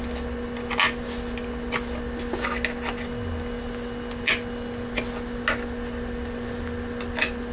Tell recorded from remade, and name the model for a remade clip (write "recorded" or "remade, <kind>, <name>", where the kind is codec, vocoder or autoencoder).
recorded